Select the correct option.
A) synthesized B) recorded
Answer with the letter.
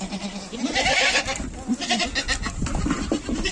B